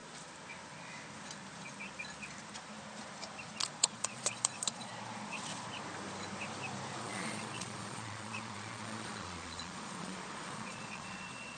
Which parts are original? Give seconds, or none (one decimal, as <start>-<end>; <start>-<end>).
0.0-3.7; 4.9-7.0